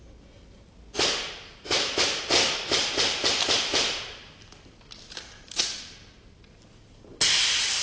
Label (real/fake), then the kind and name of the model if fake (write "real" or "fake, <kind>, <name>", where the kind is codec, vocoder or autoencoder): real